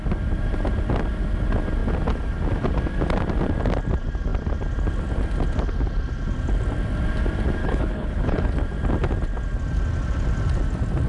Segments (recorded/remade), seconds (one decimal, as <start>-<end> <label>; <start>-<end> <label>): 0.0-7.6 recorded; 7.6-8.5 remade; 8.5-11.1 recorded